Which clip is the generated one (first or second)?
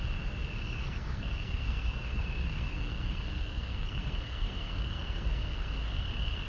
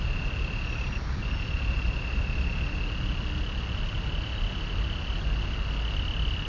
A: first